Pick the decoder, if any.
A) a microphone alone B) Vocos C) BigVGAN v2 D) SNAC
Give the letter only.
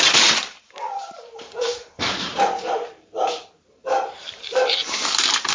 C